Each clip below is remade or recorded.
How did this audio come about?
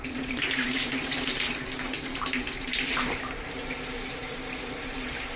remade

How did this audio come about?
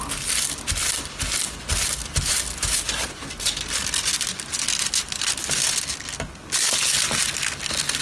recorded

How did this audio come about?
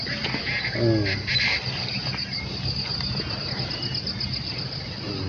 recorded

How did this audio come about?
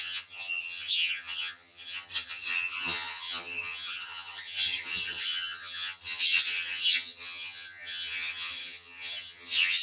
remade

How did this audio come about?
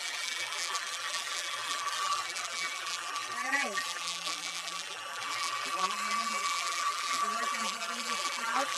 remade